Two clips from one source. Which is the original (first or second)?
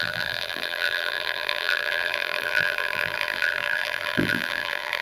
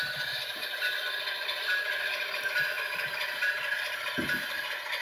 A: second